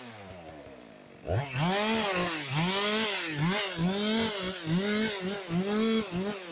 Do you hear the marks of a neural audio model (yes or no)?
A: no